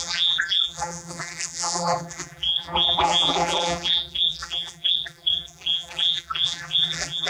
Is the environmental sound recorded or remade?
remade